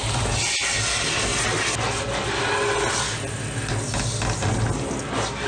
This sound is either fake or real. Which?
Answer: real